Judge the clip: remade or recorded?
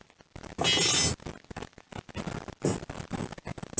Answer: recorded